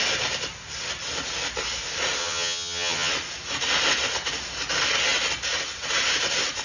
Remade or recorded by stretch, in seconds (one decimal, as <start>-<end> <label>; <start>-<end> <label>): 0.0-2.2 recorded; 2.2-3.1 remade; 3.1-6.6 recorded